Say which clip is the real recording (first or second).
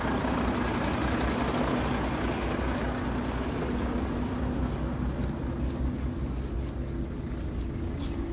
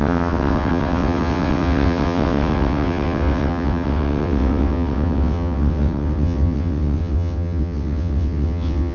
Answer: first